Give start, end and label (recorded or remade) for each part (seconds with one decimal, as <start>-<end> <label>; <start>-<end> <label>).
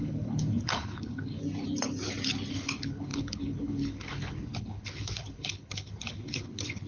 0.0-1.4 remade; 1.4-2.5 recorded; 2.5-6.9 remade